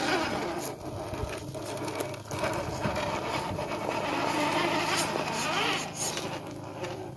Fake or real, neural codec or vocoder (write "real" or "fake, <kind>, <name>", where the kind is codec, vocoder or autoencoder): real